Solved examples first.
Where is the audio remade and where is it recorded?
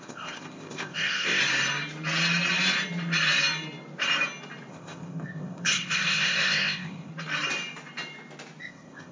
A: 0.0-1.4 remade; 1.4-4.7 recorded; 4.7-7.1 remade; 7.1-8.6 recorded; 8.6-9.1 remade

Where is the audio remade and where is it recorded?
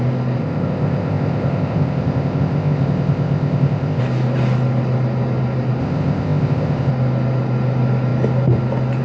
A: 0.0-0.4 recorded; 0.4-4.0 remade; 4.0-5.8 recorded; 5.8-6.9 remade; 6.9-9.0 recorded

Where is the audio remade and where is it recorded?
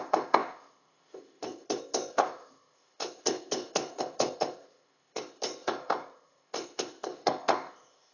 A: 0.0-8.1 remade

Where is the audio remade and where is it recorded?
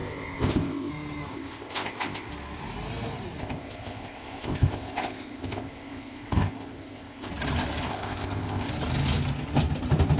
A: 0.0-0.9 remade; 0.9-1.3 recorded; 1.3-2.3 remade; 2.3-3.4 recorded; 3.4-7.3 remade; 7.3-7.9 recorded; 7.9-8.7 remade; 8.7-10.2 recorded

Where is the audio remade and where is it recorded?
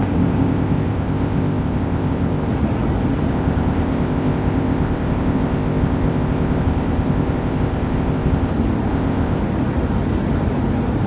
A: 0.0-2.5 remade; 2.5-3.3 recorded; 3.3-8.5 remade; 8.5-8.9 recorded; 8.9-9.4 remade; 9.4-11.1 recorded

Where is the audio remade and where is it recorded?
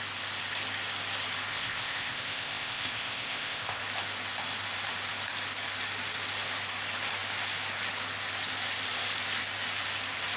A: 0.0-1.5 recorded; 1.5-3.8 remade; 3.8-10.4 recorded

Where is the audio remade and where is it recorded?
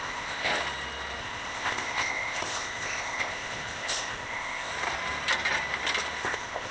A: 0.0-0.5 remade; 0.5-1.2 recorded; 1.2-4.7 remade; 4.7-6.2 recorded; 6.2-6.7 remade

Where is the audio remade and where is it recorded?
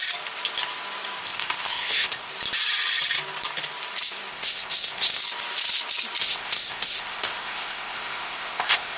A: 0.0-1.2 recorded; 1.2-2.3 remade; 2.3-4.3 recorded; 4.3-5.2 remade; 5.2-6.2 recorded; 6.2-9.0 remade